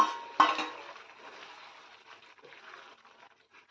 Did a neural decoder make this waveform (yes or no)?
no